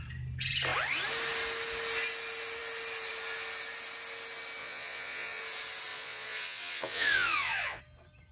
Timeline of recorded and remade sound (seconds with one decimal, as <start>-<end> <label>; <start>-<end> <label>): 0.0-4.6 recorded; 4.6-5.4 remade; 5.4-5.9 recorded; 5.9-7.8 remade; 7.8-8.3 recorded